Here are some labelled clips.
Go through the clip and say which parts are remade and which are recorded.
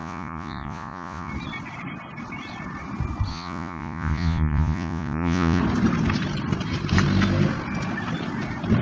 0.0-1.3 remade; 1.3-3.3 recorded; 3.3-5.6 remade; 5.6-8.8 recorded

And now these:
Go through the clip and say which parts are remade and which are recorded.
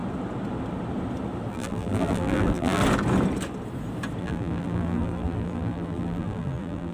0.0-1.5 recorded; 1.5-2.8 remade; 2.8-4.2 recorded; 4.2-6.9 remade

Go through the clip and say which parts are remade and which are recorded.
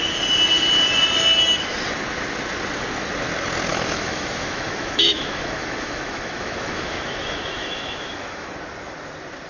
0.0-3.7 recorded; 3.7-8.5 remade; 8.5-9.5 recorded